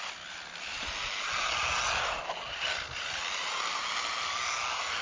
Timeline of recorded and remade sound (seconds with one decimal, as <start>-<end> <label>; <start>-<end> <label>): 0.0-5.0 recorded